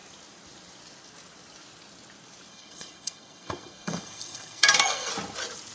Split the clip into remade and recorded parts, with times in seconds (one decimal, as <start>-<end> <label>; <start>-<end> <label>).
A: 0.0-2.5 recorded; 2.5-5.1 remade; 5.1-5.7 recorded